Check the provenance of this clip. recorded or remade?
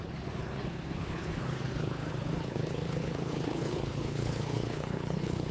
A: remade